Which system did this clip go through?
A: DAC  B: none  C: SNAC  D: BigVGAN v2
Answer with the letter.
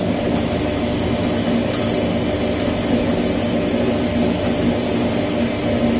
B